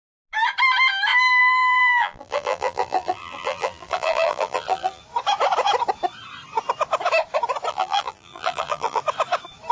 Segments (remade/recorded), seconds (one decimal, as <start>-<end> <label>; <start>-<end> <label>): 0.0-1.4 recorded; 1.4-5.0 remade; 5.0-7.7 recorded; 7.7-9.0 remade; 9.0-9.7 recorded